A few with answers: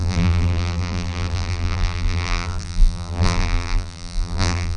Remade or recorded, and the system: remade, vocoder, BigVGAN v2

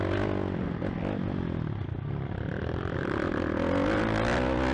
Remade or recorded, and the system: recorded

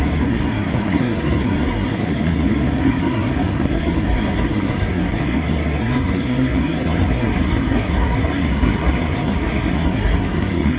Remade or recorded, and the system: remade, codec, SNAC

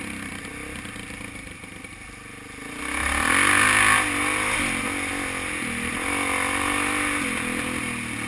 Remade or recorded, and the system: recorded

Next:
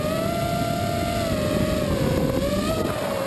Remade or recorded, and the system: recorded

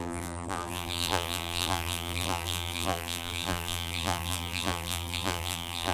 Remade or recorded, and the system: remade, vocoder, BigVGAN v2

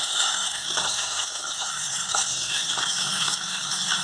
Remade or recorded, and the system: remade, codec, SNAC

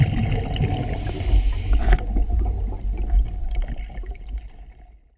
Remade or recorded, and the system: recorded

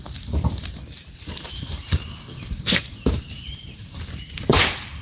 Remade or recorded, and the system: remade, vocoder, BigVGAN v2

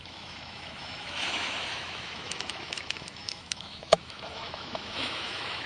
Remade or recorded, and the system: remade, autoencoder, DAC-VAE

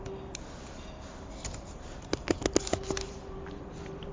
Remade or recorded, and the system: recorded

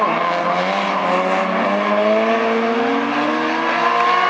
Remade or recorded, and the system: recorded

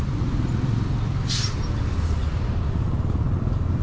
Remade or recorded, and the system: recorded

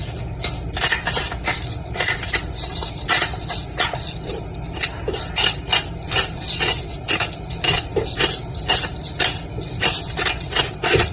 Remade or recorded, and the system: recorded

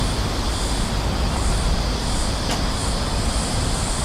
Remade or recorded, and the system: recorded